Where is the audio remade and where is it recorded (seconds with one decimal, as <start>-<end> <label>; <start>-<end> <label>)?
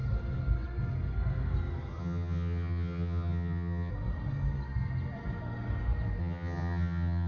0.0-2.0 recorded; 2.0-3.9 remade; 3.9-6.2 recorded; 6.2-7.3 remade